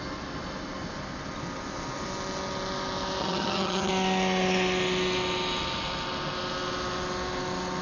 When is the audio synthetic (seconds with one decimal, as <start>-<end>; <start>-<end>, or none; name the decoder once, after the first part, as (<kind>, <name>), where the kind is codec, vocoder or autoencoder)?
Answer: 3.2-3.9 (vocoder, HiFi-GAN)